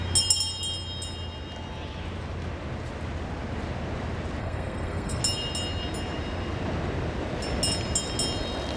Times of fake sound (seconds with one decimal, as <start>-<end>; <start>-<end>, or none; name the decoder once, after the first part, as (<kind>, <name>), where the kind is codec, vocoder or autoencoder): 4.4-5.2 (codec, SNAC)